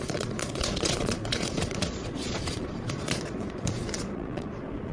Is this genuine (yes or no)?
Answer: no